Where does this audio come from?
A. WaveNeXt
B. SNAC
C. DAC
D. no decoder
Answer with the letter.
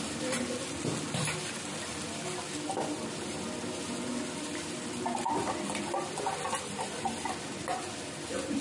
D